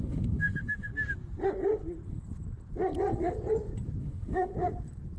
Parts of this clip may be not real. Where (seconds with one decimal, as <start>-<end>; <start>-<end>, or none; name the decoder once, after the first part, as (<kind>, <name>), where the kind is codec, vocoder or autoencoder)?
0.0-0.9 (autoencoder, DAC-VAE); 4.0-4.5